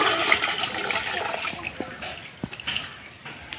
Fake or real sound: real